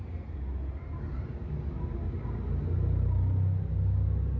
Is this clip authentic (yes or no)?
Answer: yes